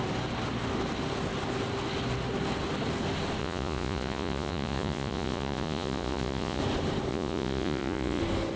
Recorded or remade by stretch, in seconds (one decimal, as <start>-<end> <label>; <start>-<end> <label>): 0.0-3.4 recorded; 3.4-6.6 remade; 6.6-7.1 recorded; 7.1-8.2 remade; 8.2-8.6 recorded

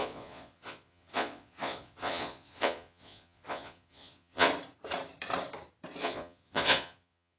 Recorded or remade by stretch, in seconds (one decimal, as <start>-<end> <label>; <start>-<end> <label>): 0.0-4.5 remade; 4.5-6.0 recorded; 6.0-7.4 remade

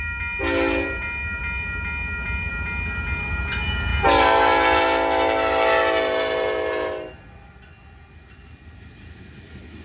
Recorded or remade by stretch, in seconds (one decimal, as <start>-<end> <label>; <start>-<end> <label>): 0.0-9.8 recorded

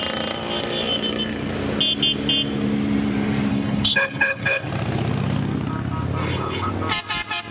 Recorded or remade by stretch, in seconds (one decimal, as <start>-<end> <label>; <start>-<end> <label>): 0.0-3.5 recorded; 3.5-4.7 remade; 4.7-6.2 recorded; 6.2-6.7 remade; 6.7-7.5 recorded

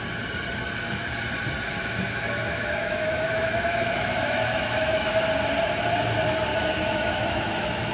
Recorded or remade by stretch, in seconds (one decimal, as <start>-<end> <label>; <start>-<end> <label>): 0.0-1.8 recorded; 1.8-5.1 remade; 5.1-6.5 recorded; 6.5-7.9 remade

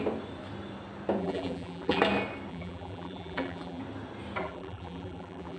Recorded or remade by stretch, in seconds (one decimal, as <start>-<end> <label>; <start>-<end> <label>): 0.0-1.2 recorded; 1.2-2.0 remade; 2.0-2.5 recorded; 2.5-3.8 remade; 3.8-4.4 recorded; 4.4-5.6 remade

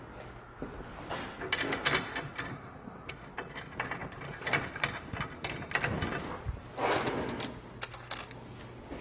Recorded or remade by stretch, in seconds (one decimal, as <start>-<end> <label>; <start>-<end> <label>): 0.0-2.5 recorded; 2.5-3.1 remade; 3.1-9.0 recorded

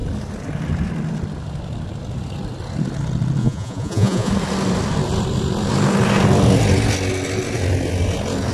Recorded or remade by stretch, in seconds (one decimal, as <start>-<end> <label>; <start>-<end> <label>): 0.0-3.4 recorded; 3.4-4.3 remade; 4.3-8.5 recorded